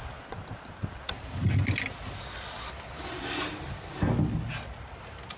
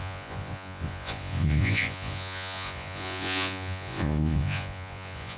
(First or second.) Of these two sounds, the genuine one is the first